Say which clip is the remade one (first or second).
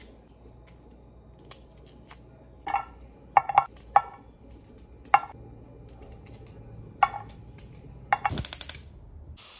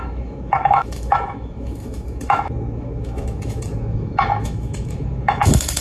second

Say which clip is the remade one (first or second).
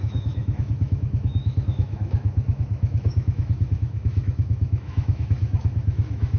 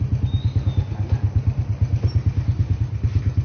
first